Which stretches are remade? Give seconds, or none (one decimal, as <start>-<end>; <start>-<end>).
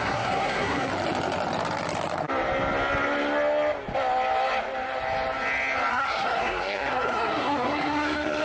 0.0-0.9; 5.9-8.4